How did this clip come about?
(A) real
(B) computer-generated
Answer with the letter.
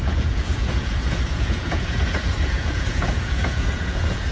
B